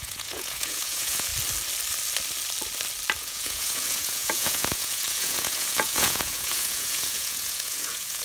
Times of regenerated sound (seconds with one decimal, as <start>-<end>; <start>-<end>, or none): 0.0-1.3; 3.2-8.2